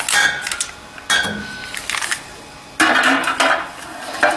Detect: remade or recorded recorded